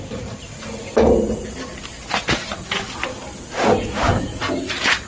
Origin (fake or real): real